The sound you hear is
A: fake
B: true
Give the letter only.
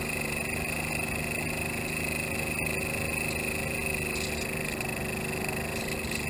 B